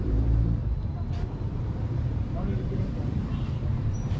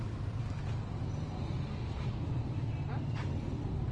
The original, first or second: second